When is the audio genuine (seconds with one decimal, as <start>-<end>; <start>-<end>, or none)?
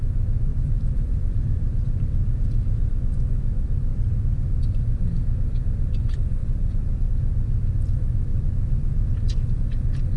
0.0-0.5; 2.9-3.9; 4.6-6.4; 7.1-8.3; 9.6-10.2